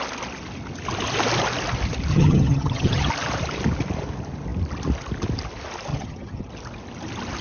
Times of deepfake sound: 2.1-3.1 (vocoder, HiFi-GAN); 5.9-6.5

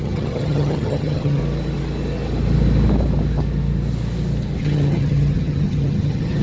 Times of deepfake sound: 0.0-1.4 (vocoder, HiFi-GAN); 4.6-6.4

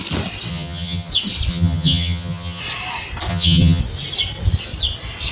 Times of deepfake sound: 0.5-1.1 (vocoder, HiFi-GAN); 1.5-2.6; 3.3-3.8

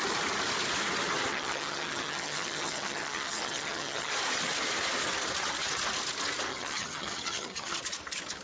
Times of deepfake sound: 1.3-4.1 (vocoder, HiFi-GAN); 6.5-7.8

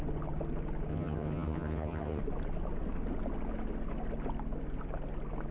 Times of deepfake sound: 0.9-2.2 (vocoder, HiFi-GAN)

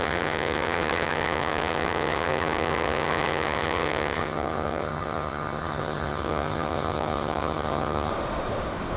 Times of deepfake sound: 0.0-8.1 (vocoder, HiFi-GAN)